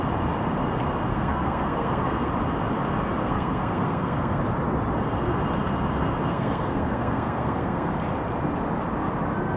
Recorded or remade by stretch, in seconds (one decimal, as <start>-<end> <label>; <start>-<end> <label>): 0.0-1.1 recorded; 1.1-2.3 remade; 2.3-3.2 recorded; 3.2-4.4 remade; 4.4-6.3 recorded; 6.3-7.9 remade; 7.9-9.6 recorded